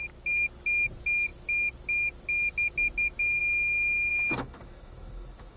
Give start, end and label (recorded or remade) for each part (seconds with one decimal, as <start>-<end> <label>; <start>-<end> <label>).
0.0-4.1 recorded; 4.1-5.6 remade